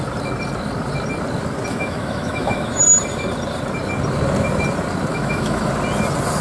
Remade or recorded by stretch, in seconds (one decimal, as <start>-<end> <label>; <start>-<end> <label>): 0.0-1.7 recorded; 1.7-2.8 remade; 2.8-5.1 recorded; 5.1-5.7 remade; 5.7-6.4 recorded